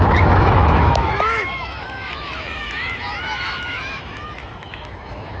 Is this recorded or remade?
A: remade